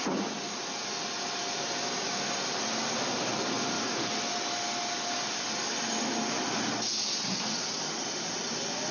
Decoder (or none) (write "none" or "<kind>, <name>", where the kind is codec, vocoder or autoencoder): none